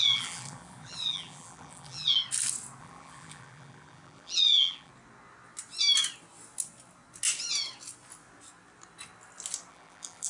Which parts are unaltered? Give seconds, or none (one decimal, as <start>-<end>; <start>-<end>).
2.2-2.8; 4.9-9.7